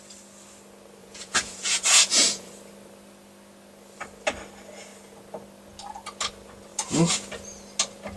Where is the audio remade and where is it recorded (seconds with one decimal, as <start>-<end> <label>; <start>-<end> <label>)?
0.0-1.0 recorded; 1.0-2.5 remade; 2.5-8.2 recorded